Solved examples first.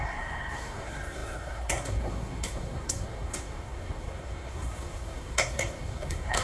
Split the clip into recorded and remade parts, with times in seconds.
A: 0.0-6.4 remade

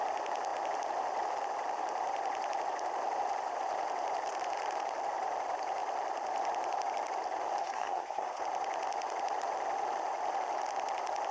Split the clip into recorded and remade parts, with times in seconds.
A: 0.0-7.6 recorded; 7.6-8.4 remade; 8.4-11.3 recorded